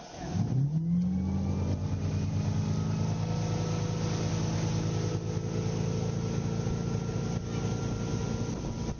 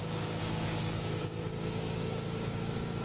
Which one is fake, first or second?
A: second